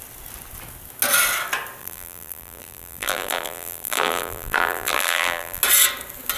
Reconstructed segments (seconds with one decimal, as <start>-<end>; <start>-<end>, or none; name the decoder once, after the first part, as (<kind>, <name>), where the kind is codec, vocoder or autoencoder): 1.8-5.6 (vocoder, BigVGAN v2)